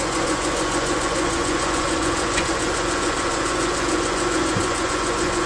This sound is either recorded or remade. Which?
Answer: remade